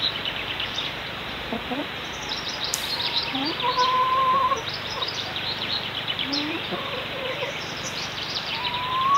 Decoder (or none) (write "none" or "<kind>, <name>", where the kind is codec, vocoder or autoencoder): vocoder, BigVGAN v2